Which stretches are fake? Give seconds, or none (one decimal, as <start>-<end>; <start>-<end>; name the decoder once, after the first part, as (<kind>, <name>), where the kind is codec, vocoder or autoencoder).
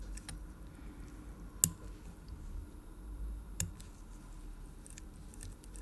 2.6-3.7 (vocoder, BigVGAN v2)